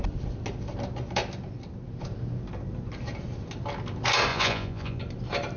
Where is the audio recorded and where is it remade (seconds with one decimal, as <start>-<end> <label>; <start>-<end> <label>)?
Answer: 0.0-4.3 recorded; 4.3-5.0 remade; 5.0-5.6 recorded